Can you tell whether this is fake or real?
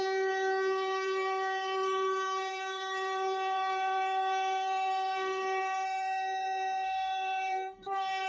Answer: fake